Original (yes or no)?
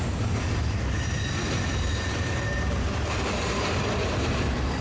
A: no